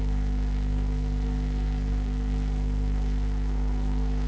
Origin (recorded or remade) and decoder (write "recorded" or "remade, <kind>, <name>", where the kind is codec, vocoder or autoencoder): remade, codec, SNAC